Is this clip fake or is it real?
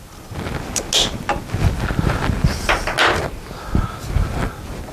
real